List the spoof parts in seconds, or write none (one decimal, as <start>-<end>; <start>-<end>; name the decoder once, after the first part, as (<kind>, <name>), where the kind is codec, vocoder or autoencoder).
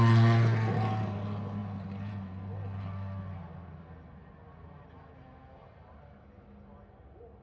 none